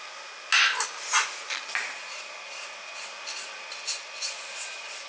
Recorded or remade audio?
recorded